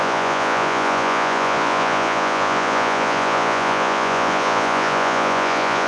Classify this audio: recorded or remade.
remade